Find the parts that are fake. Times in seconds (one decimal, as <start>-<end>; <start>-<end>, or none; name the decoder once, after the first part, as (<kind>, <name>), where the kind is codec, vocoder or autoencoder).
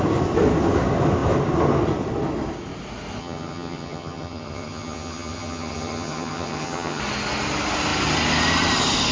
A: 3.2-7.0 (vocoder, HiFi-GAN)